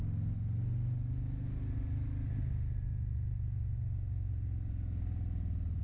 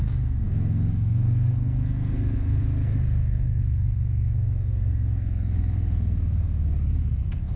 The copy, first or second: second